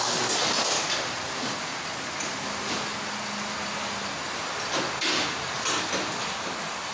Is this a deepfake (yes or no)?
no